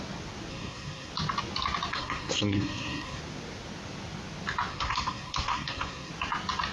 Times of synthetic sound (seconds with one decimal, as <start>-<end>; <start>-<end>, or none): 0.5-1.1; 1.9-3.2; 4.7-6.1